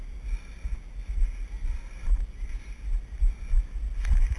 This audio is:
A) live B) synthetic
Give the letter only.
A